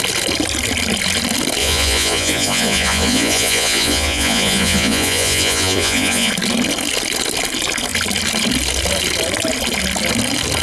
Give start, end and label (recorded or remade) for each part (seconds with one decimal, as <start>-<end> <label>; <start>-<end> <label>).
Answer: 0.0-1.6 recorded; 1.6-6.3 remade; 6.3-10.6 recorded